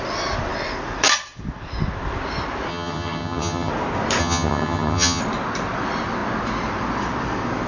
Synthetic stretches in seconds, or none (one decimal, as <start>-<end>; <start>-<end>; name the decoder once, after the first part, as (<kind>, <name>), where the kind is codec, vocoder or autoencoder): 2.7-3.7 (vocoder, HiFi-GAN); 4.2-5.2